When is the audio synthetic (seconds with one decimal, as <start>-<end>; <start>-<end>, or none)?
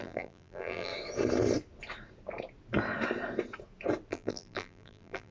0.0-0.9; 4.1-5.3